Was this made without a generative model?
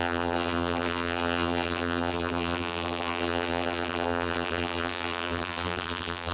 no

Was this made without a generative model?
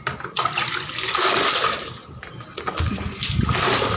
yes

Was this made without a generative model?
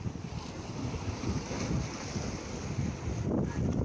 yes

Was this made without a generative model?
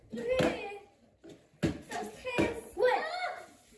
yes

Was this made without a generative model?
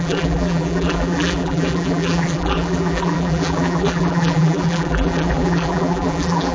no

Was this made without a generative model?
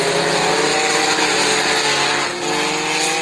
yes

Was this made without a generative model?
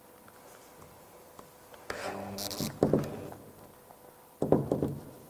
yes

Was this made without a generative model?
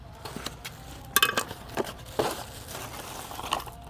yes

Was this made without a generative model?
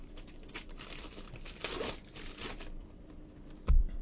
no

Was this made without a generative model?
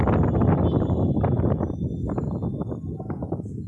yes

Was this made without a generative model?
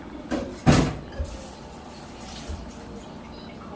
no